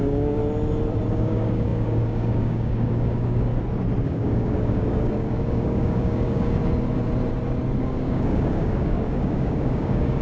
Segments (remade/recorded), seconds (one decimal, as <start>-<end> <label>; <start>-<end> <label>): 0.0-0.4 remade; 0.4-1.1 recorded; 1.1-3.5 remade; 3.5-4.0 recorded; 4.0-6.6 remade; 6.6-7.8 recorded; 7.8-10.2 remade